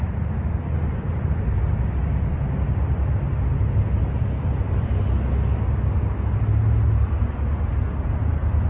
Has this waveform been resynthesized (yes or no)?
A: no